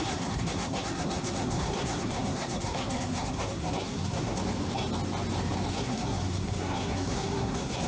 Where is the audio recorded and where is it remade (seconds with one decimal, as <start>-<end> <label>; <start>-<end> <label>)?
0.0-4.4 remade; 4.4-5.7 recorded; 5.7-7.9 remade